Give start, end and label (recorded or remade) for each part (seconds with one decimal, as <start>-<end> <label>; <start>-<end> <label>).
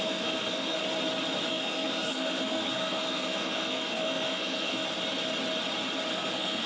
0.0-0.8 remade; 0.8-1.5 recorded; 1.5-4.8 remade; 4.8-6.1 recorded; 6.1-6.7 remade